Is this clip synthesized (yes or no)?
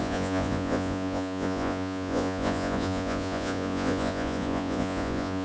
yes